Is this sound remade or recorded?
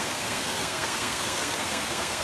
remade